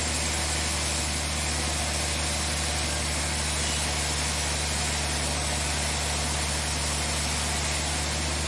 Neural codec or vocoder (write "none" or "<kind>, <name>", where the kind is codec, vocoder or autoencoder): none